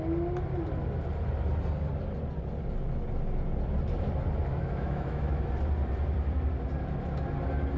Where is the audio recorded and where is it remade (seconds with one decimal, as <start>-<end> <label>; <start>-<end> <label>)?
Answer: 0.0-4.5 recorded; 4.5-5.4 remade; 5.4-7.8 recorded